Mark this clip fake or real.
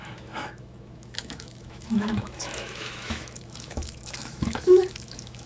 fake